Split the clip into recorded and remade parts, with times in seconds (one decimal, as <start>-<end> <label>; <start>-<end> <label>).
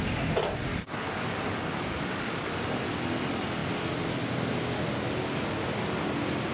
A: 0.0-0.7 recorded; 0.7-2.6 remade; 2.6-6.5 recorded